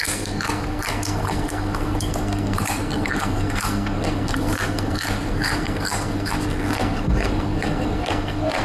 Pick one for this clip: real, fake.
fake